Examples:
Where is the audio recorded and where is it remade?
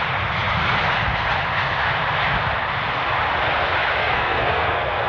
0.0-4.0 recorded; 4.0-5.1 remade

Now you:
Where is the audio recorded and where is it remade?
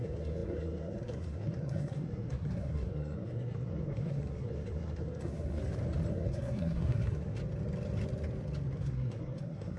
0.0-5.6 remade; 5.6-6.1 recorded; 6.1-7.4 remade; 7.4-8.8 recorded; 8.8-9.8 remade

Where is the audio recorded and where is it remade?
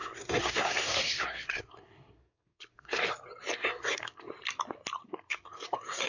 0.0-3.1 remade; 3.1-3.5 recorded; 3.5-4.3 remade; 4.3-5.0 recorded; 5.0-6.1 remade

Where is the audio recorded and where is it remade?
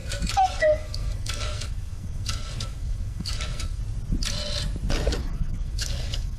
0.0-3.8 remade; 3.8-5.2 recorded; 5.2-6.4 remade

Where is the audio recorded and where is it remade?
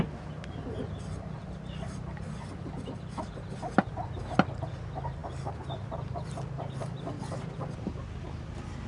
0.0-8.9 recorded